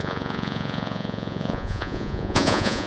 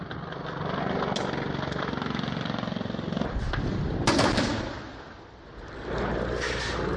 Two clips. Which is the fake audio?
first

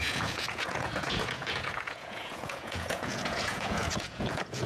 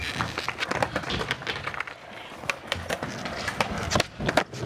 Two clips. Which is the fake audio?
first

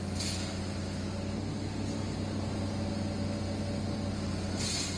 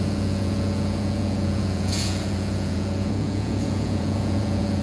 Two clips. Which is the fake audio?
second